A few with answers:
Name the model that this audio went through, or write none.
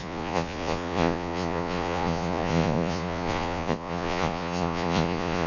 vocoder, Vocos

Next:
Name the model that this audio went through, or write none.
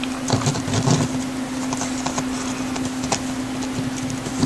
none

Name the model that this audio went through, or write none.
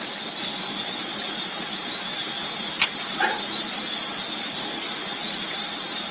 none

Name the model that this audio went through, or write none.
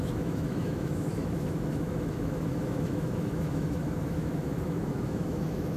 autoencoder, DAC-VAE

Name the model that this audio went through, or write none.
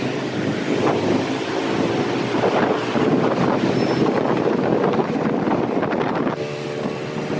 none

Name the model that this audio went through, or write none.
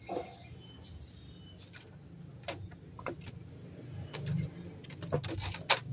none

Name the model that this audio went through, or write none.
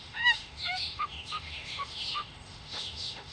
autoencoder, DAC-VAE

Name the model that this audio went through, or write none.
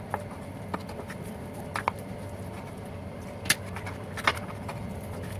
none